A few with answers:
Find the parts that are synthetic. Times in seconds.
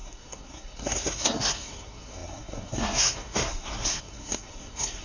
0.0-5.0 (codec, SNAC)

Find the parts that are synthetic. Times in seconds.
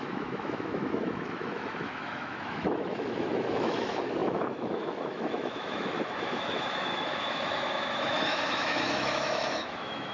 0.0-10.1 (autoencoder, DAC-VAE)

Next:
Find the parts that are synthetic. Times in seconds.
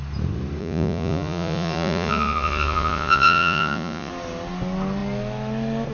0.6-4.1 (vocoder, Vocos)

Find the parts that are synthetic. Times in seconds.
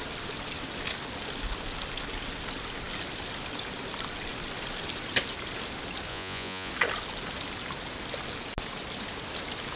6.1-6.7 (vocoder, Vocos)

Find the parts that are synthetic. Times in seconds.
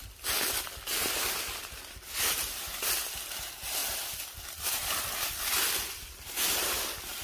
none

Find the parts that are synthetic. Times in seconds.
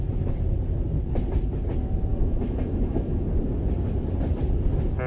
2.1-3.3 (autoencoder, DAC-VAE)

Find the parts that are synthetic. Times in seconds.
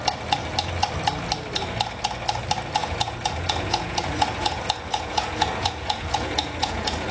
2.8-7.1 (vocoder, Vocos)